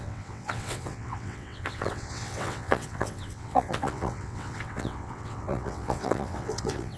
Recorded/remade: remade